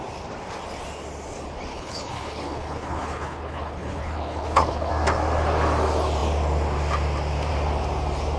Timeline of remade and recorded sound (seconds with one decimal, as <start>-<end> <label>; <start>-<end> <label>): 0.0-1.7 recorded; 1.7-4.9 remade; 4.9-8.4 recorded